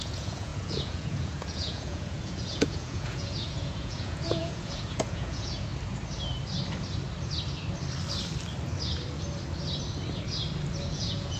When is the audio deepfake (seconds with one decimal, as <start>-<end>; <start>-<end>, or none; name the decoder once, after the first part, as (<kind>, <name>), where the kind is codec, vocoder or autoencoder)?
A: 0.0-5.7 (vocoder, Vocos); 10.9-11.4